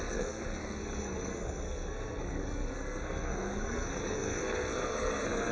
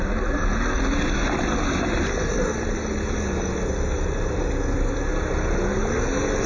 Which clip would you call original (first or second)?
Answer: second